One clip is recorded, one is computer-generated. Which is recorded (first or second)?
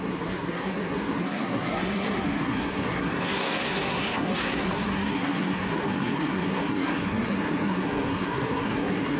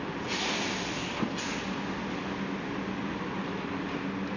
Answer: second